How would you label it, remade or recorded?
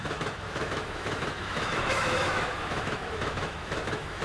remade